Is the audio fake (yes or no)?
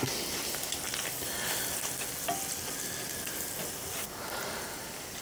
no